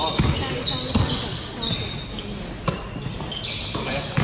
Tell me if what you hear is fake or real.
real